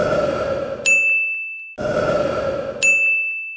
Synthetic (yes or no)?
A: no